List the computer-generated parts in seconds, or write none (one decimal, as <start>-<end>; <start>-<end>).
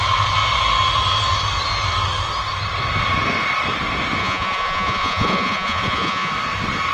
4.2-6.3